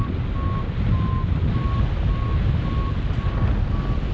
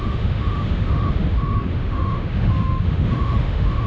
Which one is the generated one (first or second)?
second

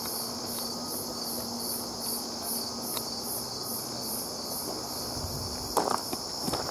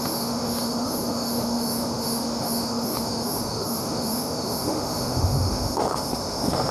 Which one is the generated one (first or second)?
second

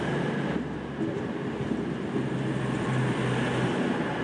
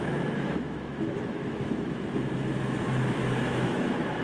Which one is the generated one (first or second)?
second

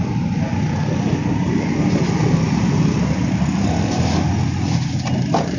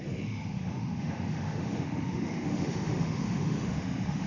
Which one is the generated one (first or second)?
second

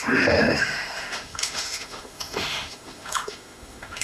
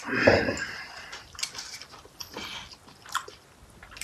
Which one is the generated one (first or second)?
first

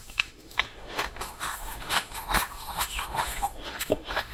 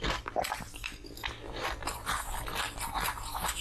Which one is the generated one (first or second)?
first